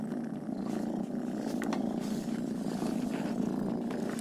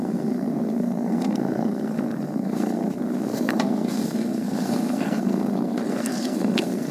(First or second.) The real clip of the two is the first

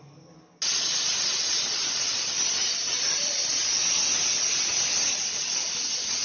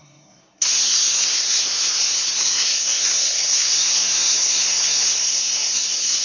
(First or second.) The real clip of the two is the first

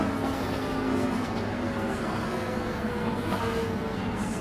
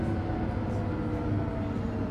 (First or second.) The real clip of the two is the second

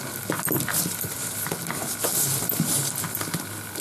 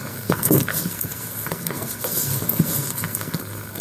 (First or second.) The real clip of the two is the first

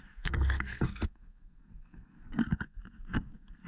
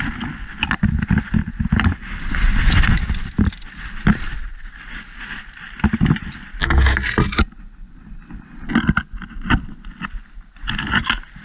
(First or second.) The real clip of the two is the second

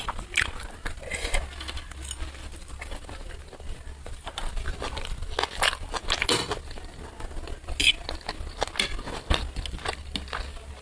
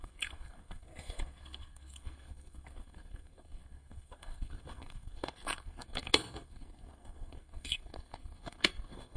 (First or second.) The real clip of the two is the first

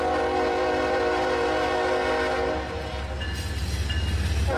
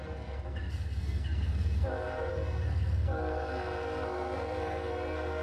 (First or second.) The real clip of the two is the first